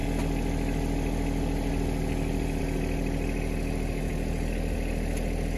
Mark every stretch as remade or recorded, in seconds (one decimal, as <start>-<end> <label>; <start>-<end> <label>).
0.0-5.6 recorded